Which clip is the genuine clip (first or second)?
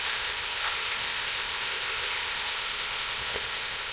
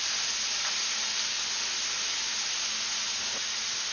second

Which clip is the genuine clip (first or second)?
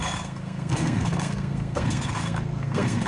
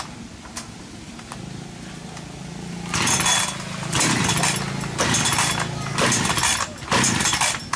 second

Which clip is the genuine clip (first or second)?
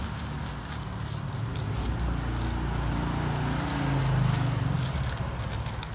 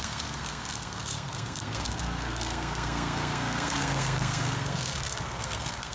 first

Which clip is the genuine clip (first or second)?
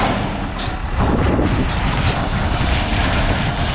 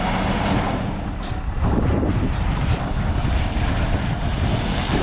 first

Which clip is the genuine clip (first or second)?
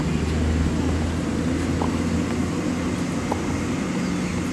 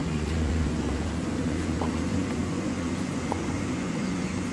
first